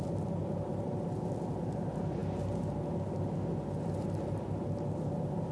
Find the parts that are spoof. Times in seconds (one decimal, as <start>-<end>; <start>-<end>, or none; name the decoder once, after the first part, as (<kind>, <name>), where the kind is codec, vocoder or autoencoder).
none